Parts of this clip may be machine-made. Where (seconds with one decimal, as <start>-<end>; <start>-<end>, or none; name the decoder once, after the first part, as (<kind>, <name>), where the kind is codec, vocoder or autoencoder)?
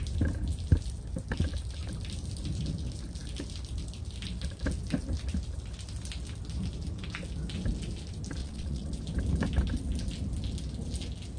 8.4-8.9 (vocoder, Vocos)